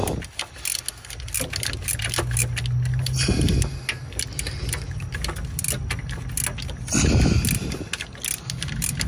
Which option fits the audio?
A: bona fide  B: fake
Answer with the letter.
A